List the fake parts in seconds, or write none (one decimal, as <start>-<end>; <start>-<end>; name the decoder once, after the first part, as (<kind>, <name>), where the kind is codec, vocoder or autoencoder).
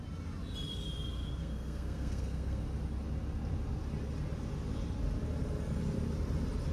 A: 1.4-2.6 (codec, SNAC)